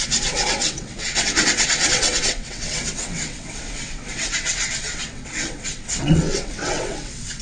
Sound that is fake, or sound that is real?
fake